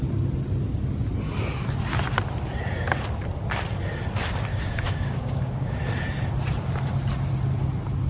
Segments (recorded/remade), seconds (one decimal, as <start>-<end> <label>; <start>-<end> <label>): 0.0-4.5 recorded; 4.5-5.8 remade; 5.8-8.1 recorded